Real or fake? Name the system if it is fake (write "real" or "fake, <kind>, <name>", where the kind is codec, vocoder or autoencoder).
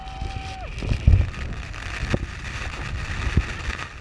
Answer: real